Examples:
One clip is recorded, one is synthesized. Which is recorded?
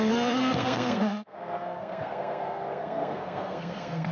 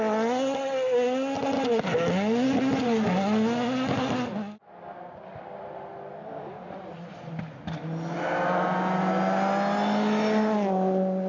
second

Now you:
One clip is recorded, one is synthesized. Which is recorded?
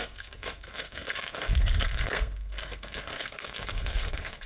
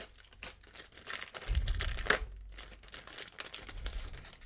second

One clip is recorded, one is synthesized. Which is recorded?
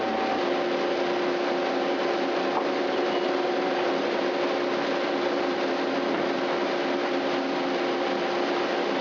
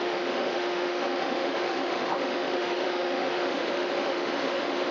first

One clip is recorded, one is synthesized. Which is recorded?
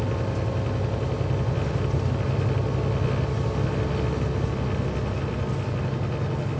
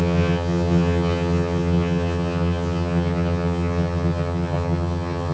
first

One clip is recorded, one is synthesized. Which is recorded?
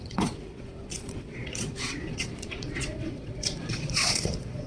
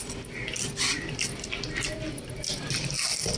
second